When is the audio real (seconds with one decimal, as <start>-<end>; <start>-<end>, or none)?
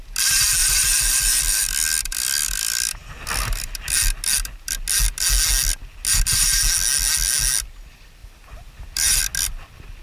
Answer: 0.0-0.6; 1.7-8.2; 9.2-10.0